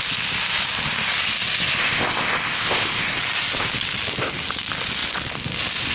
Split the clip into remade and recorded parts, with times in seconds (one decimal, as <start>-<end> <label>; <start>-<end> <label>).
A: 0.0-1.8 recorded; 1.8-3.2 remade; 3.2-5.9 recorded